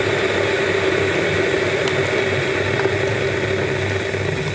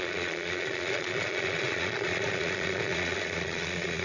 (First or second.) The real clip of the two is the first